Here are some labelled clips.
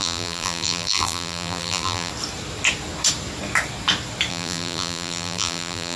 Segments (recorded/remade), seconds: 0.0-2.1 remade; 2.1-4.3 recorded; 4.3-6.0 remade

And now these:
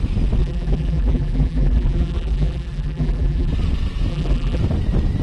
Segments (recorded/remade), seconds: 0.0-0.4 recorded; 0.4-3.5 remade; 3.5-4.1 recorded; 4.1-4.6 remade; 4.6-5.2 recorded

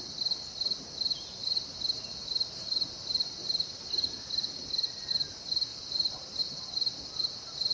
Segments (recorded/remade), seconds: 0.0-1.4 recorded; 1.4-5.1 remade; 5.1-5.7 recorded; 5.7-6.4 remade; 6.4-7.7 recorded

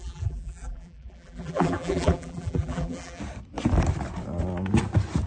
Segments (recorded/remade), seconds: 0.0-3.2 remade; 3.2-5.3 recorded

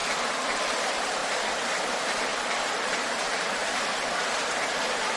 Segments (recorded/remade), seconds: 0.0-0.6 recorded; 0.6-1.2 remade; 1.2-1.8 recorded; 1.8-3.6 remade; 3.6-4.5 recorded; 4.5-5.2 remade

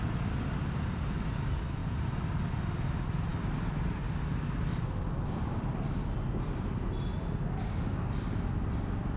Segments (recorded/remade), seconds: 0.0-1.8 recorded; 1.8-2.5 remade; 2.5-9.2 recorded